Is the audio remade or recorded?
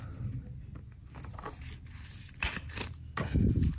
recorded